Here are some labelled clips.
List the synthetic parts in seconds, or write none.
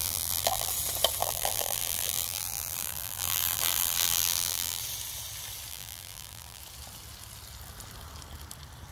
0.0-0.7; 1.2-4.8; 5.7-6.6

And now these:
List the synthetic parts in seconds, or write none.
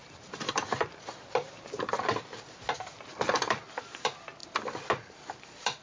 0.0-2.6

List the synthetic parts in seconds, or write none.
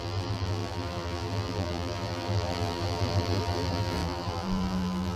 0.0-5.2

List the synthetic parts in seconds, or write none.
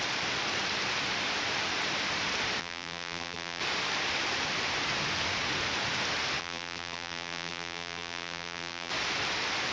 2.6-3.6; 6.4-8.9